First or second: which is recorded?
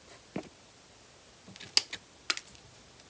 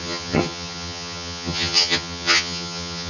first